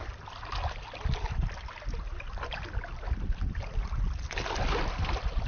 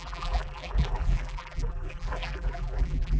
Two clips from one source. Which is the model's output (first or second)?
second